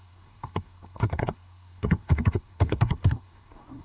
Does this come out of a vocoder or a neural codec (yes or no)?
yes